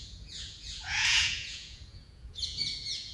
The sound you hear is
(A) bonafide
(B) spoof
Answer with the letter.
B